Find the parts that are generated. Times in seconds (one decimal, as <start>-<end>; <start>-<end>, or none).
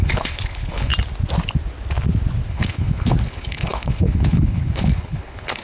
0.0-0.9; 2.5-5.6